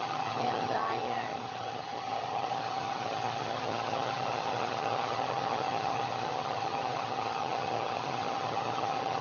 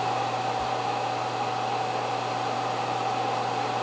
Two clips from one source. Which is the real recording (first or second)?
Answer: second